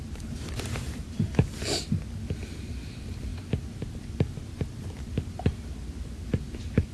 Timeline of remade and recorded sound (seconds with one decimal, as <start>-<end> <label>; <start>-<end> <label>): 0.0-6.9 remade